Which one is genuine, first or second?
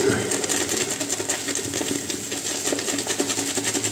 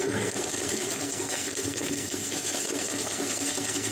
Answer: first